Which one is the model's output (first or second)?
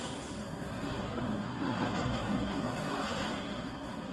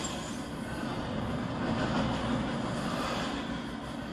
first